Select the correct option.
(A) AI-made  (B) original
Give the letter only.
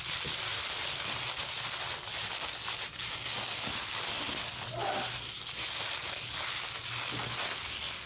B